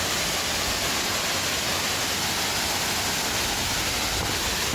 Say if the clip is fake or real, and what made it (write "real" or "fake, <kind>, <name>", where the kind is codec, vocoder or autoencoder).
real